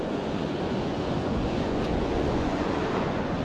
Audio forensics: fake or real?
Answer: fake